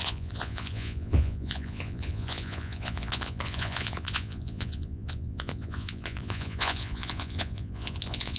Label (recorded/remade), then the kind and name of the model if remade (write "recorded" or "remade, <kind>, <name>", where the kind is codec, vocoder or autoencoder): remade, vocoder, Vocos